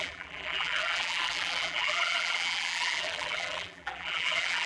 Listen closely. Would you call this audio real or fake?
fake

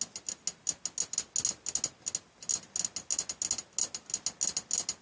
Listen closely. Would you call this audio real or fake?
real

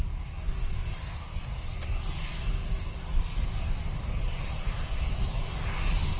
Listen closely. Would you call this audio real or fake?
real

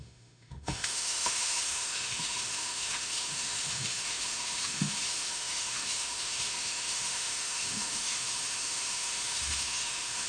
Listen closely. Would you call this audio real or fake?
fake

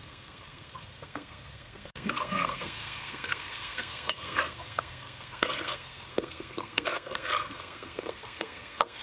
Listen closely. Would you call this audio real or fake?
fake